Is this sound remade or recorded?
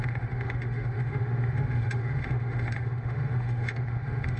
remade